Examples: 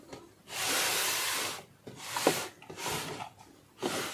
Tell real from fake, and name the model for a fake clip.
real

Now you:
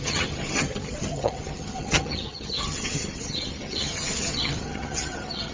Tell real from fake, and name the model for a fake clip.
fake, vocoder, HiFi-GAN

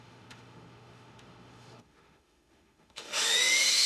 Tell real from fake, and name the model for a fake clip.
fake, autoencoder, DAC-VAE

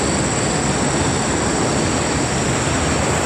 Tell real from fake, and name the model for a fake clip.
real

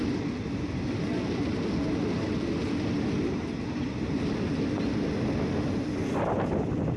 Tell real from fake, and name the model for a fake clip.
real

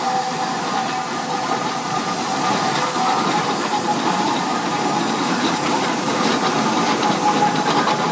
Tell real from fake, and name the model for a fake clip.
fake, vocoder, BigVGAN v2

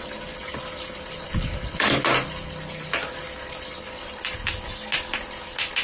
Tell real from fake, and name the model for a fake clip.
real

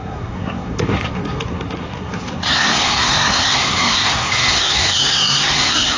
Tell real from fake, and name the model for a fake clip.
fake, codec, SNAC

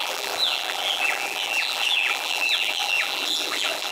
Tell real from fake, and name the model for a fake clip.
fake, vocoder, BigVGAN v2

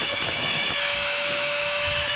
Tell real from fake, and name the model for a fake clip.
fake, autoencoder, DAC-VAE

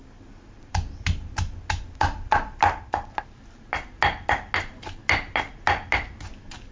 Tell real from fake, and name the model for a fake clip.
real